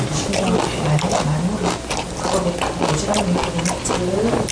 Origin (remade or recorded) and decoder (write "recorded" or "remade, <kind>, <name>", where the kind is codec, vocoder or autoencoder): recorded